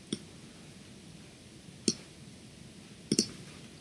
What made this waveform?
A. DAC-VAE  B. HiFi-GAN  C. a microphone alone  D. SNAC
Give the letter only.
C